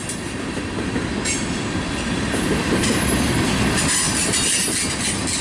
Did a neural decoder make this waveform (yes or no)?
no